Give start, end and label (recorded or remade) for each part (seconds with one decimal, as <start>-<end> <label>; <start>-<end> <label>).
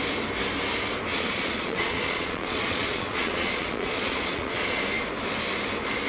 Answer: 0.0-1.1 recorded; 1.1-4.8 remade; 4.8-6.1 recorded